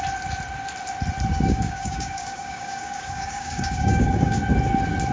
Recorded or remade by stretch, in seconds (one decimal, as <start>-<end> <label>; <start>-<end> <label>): 0.0-1.3 recorded; 1.3-4.4 remade; 4.4-5.1 recorded

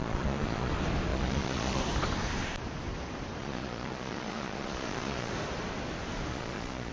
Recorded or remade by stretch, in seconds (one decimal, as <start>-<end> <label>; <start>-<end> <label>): 0.0-0.7 remade; 0.7-1.1 recorded; 1.1-1.8 remade; 1.8-3.4 recorded; 3.4-5.3 remade; 5.3-6.3 recorded; 6.3-6.9 remade

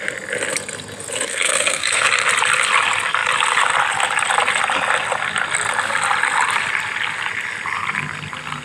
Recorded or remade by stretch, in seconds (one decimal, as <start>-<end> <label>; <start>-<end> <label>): 0.0-1.3 recorded; 1.3-2.1 remade; 2.1-8.6 recorded

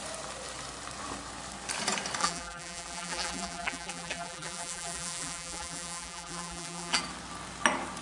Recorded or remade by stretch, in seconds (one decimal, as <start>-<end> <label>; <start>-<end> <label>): 0.0-2.2 recorded; 2.2-7.0 remade; 7.0-8.0 recorded

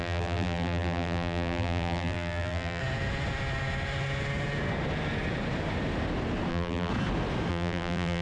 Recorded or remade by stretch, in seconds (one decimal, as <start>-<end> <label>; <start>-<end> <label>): 0.0-2.8 remade; 2.8-6.5 recorded; 6.5-6.9 remade; 6.9-7.5 recorded; 7.5-8.2 remade